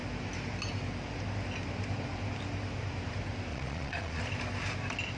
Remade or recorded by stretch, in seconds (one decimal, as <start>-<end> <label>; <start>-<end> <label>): 0.0-3.5 recorded; 3.5-4.2 remade; 4.2-5.2 recorded